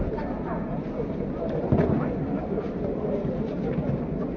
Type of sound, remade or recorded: recorded